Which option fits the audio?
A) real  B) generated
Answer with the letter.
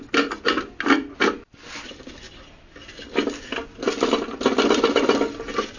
A